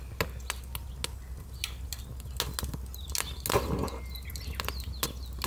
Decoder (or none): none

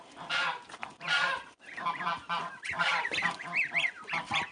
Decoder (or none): vocoder, BigVGAN v2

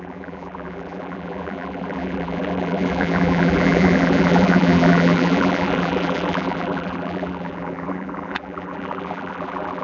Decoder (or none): vocoder, BigVGAN v2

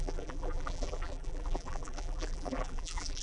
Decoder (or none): vocoder, BigVGAN v2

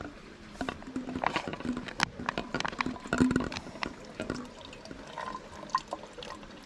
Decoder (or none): none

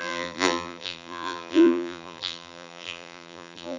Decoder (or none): vocoder, BigVGAN v2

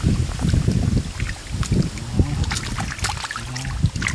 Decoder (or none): none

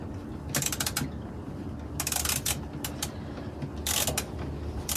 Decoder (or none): none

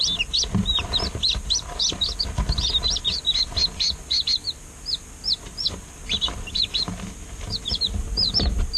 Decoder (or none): none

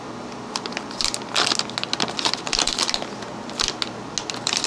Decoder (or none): none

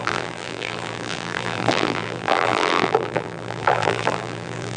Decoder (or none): vocoder, BigVGAN v2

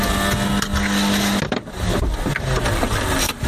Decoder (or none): none